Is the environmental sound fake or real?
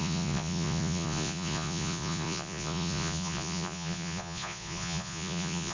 fake